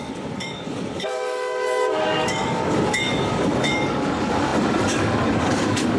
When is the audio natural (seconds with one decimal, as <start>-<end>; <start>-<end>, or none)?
none

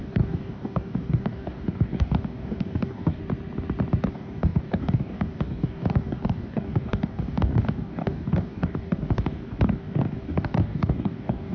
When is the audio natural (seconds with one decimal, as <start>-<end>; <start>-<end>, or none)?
3.2-4.1